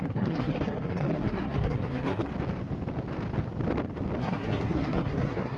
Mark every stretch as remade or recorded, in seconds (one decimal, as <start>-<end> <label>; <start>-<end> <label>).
0.0-2.3 remade; 2.3-4.2 recorded; 4.2-5.6 remade